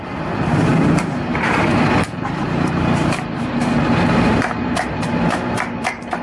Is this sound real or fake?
fake